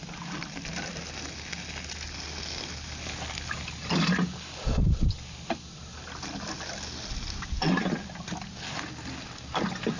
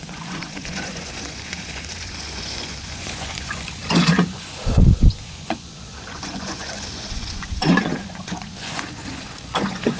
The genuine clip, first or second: first